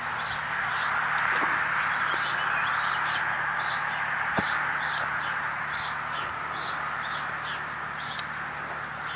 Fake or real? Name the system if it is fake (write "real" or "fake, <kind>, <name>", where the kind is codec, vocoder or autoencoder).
real